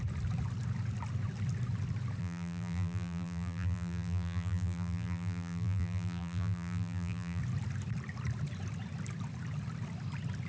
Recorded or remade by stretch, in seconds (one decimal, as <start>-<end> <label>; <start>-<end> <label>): 0.0-2.2 recorded; 2.2-7.4 remade; 7.4-10.5 recorded